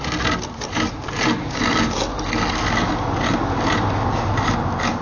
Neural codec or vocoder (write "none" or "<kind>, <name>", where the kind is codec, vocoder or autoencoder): none